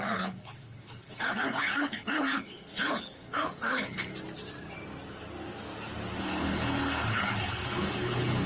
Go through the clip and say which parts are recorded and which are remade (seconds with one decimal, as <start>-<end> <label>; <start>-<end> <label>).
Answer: 0.0-4.1 remade; 4.1-6.2 recorded; 6.2-8.5 remade